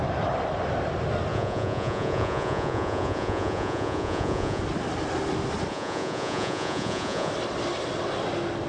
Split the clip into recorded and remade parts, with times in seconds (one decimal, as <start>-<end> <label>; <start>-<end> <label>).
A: 0.0-1.3 recorded; 1.3-4.6 remade; 4.6-5.7 recorded; 5.7-7.3 remade; 7.3-8.7 recorded